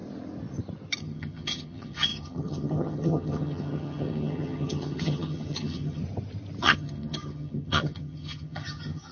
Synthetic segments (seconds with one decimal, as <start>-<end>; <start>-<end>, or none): 1.0-6.0; 6.6-9.1